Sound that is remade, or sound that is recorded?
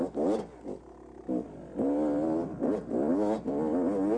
recorded